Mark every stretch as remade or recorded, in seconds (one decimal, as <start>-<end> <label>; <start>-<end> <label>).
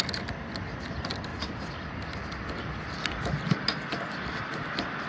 0.0-5.1 recorded